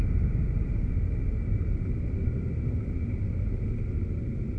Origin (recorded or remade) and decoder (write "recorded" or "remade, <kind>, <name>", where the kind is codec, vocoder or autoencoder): remade, vocoder, BigVGAN v2